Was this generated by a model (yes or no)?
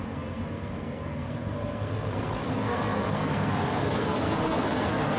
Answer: yes